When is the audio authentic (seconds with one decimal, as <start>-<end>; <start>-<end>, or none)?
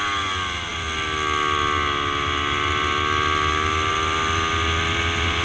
0.0-5.4